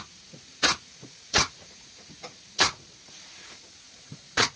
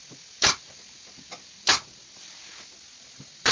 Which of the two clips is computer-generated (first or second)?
first